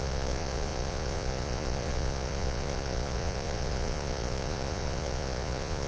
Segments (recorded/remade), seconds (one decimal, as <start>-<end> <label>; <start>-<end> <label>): 0.0-5.9 remade